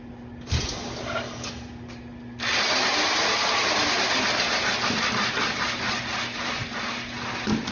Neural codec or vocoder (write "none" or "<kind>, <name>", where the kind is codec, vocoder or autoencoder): none